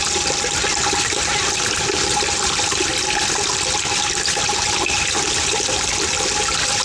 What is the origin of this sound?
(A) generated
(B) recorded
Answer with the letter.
B